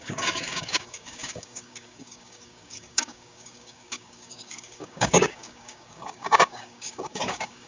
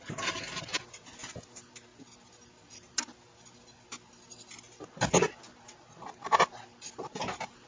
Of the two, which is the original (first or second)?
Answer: second